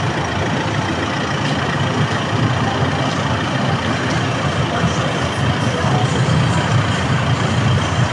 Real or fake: real